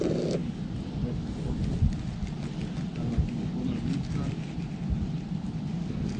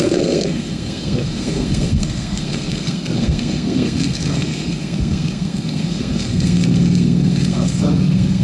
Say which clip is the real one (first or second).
first